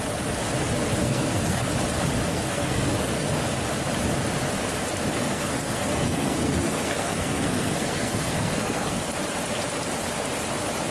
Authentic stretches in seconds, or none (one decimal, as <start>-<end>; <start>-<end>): 0.0-1.0; 1.7-2.3; 3.4-5.1; 9.0-10.9

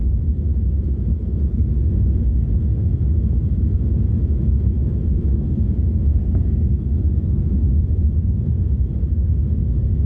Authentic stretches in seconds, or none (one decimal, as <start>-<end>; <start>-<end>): 0.0-6.1; 7.7-10.1

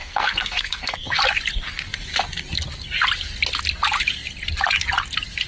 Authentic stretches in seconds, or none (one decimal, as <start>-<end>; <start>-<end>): 1.2-5.5

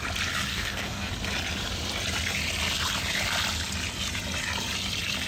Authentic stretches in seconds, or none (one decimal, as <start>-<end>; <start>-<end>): 0.0-0.5; 1.1-5.3

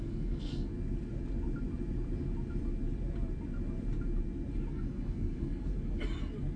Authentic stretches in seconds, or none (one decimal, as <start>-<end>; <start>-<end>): 0.7-4.7; 5.7-6.6